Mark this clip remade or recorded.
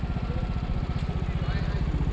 recorded